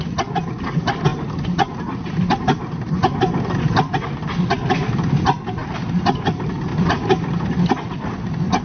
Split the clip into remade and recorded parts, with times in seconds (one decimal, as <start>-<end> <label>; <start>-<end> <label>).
0.0-1.1 remade; 1.1-3.9 recorded; 3.9-8.6 remade